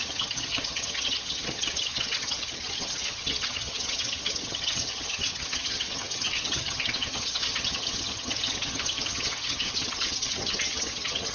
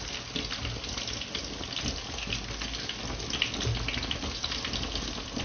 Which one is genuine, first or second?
second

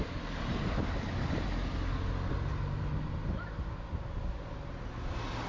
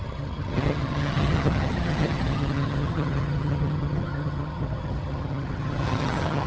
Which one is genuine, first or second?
first